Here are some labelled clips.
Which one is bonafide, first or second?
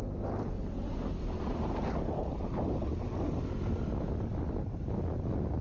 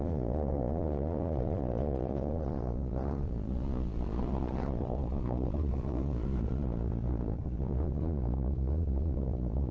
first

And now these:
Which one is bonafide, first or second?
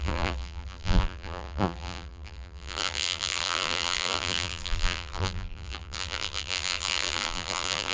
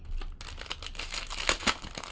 second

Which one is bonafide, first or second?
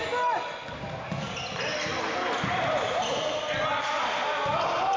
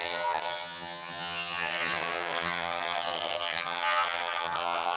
first